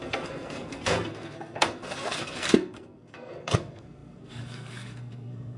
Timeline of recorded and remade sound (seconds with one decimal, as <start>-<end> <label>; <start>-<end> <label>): 0.0-5.6 remade